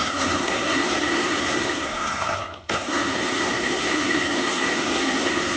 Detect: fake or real fake